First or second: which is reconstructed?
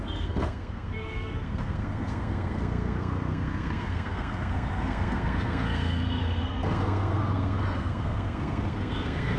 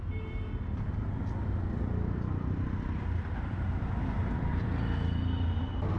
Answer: first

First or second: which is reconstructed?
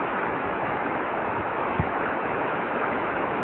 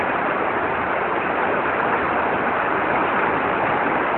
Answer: first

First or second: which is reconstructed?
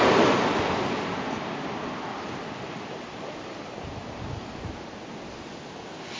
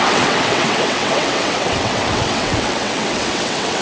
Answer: second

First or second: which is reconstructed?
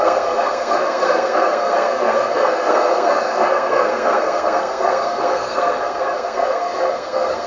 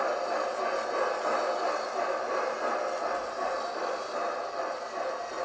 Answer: first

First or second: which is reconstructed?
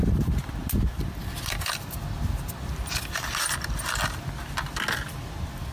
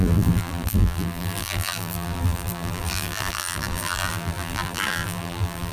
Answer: second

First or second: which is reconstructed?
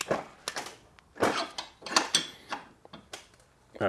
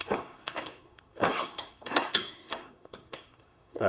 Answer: second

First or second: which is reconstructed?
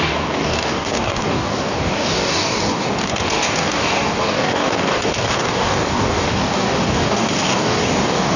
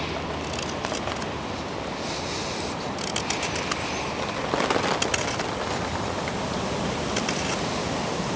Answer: first